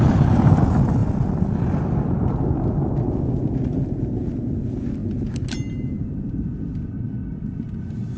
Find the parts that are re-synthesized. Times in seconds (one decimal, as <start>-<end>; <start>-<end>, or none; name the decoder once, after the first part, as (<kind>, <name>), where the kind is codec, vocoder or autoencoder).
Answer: none